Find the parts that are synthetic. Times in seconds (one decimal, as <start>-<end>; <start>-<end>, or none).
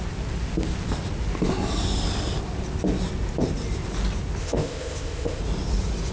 4.4-5.4